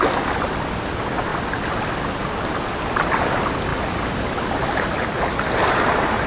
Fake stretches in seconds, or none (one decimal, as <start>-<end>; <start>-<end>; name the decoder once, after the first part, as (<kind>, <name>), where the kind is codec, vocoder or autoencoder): none